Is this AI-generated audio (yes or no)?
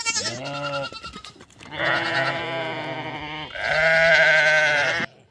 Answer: no